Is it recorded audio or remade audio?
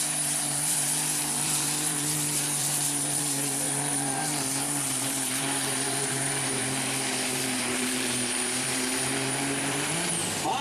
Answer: remade